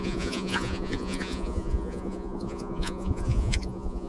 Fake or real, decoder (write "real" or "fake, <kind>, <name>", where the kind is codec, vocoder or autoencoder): fake, vocoder, Vocos